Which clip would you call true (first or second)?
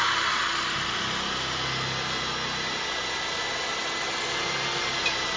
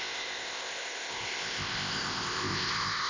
first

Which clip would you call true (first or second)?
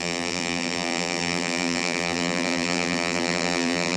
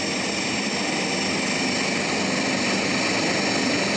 second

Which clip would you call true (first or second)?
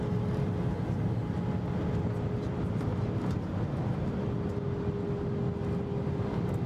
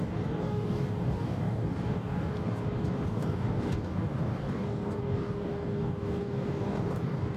first